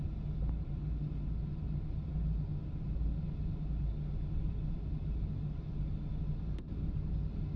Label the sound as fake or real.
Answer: real